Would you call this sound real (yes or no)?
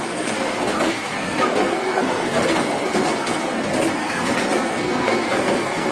no